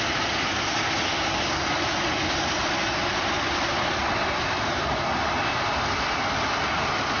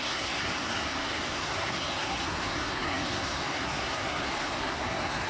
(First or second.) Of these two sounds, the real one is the first